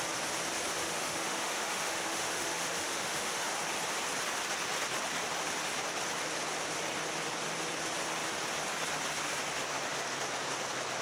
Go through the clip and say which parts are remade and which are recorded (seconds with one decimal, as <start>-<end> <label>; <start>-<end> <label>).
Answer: 0.0-0.8 recorded; 0.8-3.5 remade; 3.5-11.0 recorded